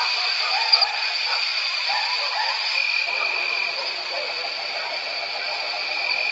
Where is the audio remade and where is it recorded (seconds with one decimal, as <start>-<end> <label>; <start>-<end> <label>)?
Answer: 0.0-6.3 recorded